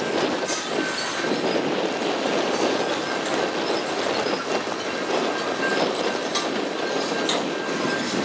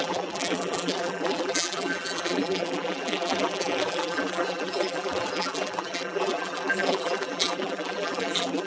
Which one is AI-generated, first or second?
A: second